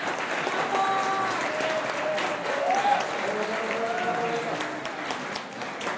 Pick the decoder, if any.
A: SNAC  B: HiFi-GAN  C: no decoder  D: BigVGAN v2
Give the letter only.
C